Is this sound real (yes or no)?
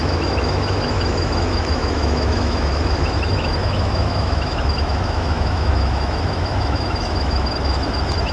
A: no